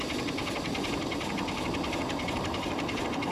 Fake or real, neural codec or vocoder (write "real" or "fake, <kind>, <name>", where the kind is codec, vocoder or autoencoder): real